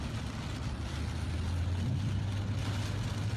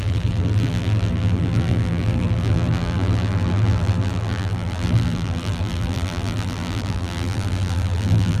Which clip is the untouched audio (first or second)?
first